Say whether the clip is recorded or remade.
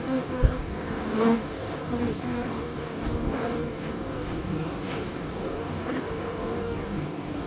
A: remade